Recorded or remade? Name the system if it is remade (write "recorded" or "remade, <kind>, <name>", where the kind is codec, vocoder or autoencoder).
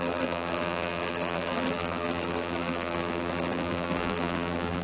remade, vocoder, BigVGAN v2